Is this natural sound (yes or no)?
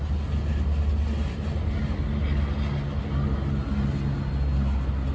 yes